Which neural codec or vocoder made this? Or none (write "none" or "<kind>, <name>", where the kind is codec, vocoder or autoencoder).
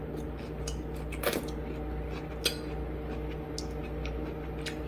none